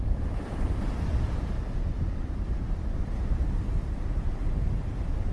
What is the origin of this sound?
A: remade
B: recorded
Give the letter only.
B